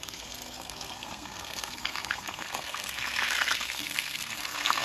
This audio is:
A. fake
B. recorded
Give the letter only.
A